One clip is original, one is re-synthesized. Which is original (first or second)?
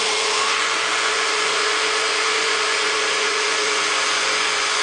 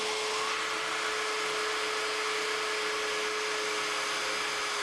second